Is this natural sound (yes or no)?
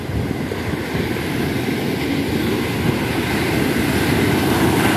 yes